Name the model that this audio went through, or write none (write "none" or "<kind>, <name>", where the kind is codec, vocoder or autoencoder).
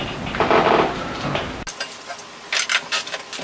none